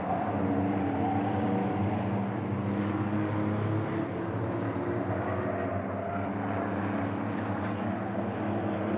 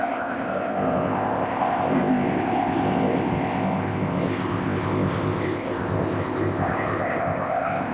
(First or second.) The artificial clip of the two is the second